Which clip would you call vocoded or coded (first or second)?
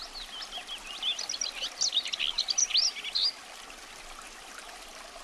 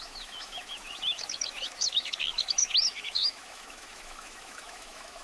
second